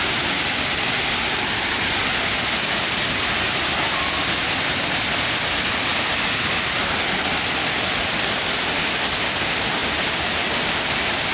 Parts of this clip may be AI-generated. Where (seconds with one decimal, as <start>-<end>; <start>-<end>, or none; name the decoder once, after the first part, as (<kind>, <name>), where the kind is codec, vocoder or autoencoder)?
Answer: 5.9-6.8 (vocoder, BigVGAN v2)